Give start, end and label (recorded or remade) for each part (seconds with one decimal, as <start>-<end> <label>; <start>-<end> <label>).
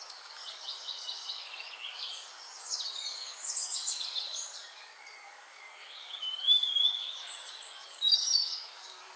0.0-9.2 remade